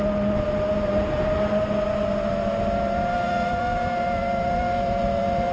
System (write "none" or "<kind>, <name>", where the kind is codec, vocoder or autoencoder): none